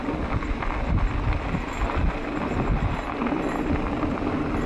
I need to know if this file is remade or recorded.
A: recorded